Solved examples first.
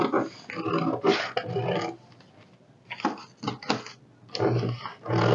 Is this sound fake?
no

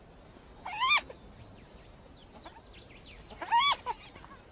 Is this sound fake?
no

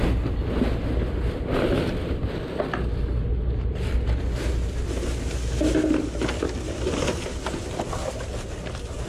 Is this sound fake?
no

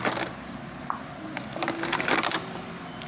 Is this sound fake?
no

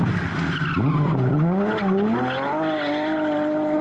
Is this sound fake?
no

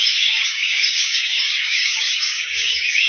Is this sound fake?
yes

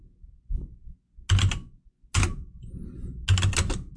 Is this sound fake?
no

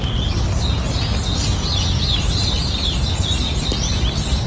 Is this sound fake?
no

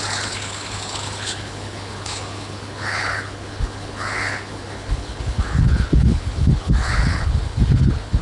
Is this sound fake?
yes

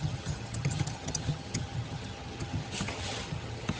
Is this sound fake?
yes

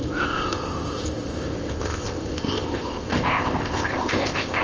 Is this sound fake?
yes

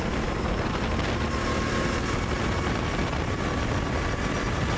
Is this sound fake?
no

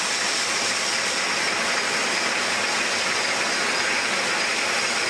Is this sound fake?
no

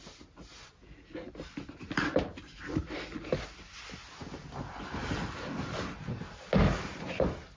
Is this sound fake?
no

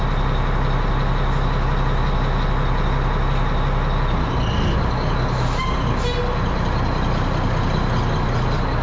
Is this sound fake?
no